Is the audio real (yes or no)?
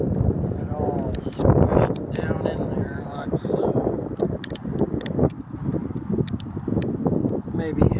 yes